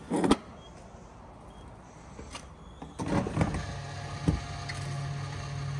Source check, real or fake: real